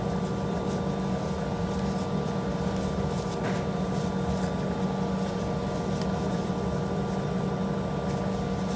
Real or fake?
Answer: real